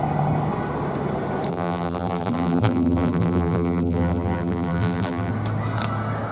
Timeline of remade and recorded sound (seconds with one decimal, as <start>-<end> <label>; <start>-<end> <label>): 0.0-1.5 recorded; 1.5-5.3 remade; 5.3-6.3 recorded